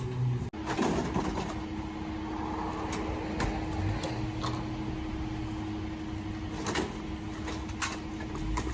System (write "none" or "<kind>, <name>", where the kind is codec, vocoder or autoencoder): none